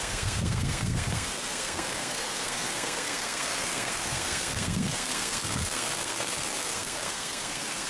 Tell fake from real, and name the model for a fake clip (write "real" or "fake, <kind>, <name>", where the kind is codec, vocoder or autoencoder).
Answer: fake, codec, SNAC